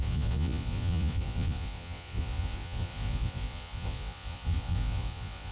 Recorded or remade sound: remade